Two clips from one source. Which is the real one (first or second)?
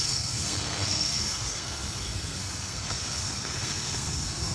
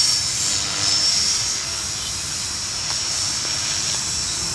second